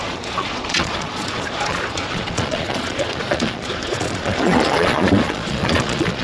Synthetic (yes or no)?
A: yes